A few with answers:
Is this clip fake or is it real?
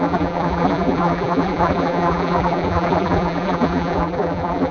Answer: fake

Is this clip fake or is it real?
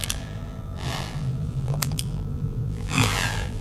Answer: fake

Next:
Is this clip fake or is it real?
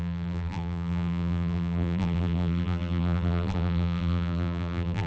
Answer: fake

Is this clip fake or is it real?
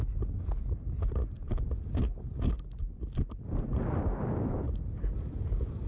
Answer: real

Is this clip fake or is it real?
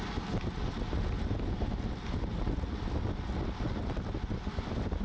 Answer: real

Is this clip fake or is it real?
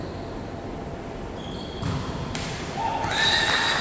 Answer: fake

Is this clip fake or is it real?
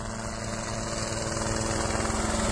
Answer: real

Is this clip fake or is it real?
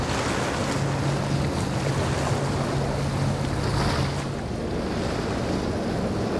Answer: real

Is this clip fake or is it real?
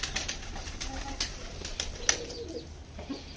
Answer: real